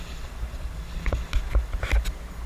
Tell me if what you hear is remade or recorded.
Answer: recorded